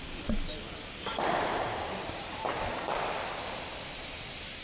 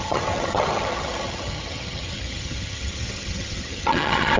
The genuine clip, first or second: first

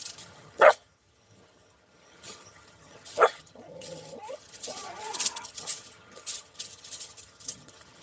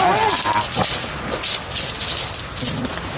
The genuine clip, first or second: second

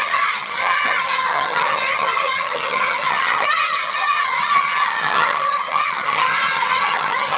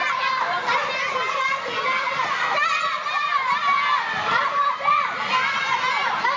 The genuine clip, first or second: second